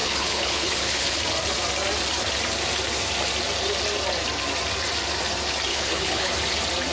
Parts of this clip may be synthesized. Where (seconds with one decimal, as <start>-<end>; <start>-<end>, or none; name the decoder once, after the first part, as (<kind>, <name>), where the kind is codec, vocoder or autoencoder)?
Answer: 0.0-1.2 (codec, HILCodec); 5.7-6.3